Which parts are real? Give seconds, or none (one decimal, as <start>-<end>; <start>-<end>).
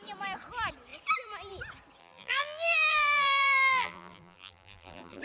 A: 0.0-2.0